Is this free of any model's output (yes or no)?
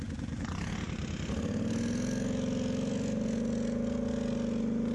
yes